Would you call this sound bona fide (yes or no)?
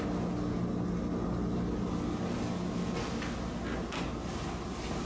yes